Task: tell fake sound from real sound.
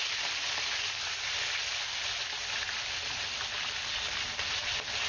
real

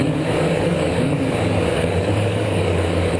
fake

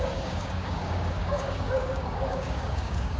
fake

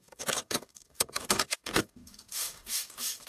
fake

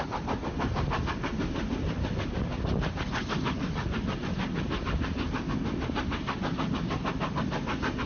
real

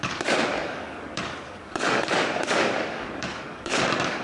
fake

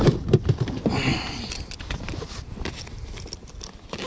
real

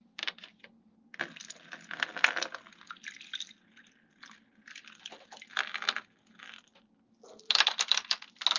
real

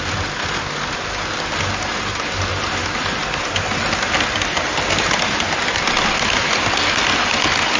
real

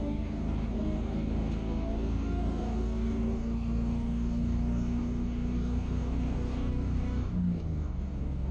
fake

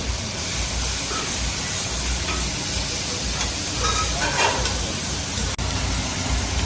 real